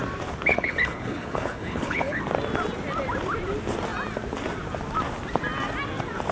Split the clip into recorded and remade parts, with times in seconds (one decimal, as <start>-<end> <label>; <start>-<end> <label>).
0.0-0.5 recorded; 0.5-2.2 remade; 2.2-6.3 recorded